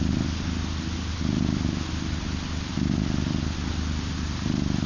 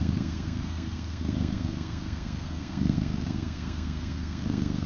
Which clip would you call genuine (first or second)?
first